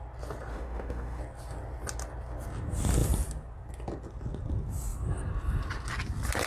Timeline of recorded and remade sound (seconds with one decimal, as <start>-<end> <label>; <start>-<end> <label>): 0.0-0.5 recorded; 0.5-1.2 remade; 1.2-6.5 recorded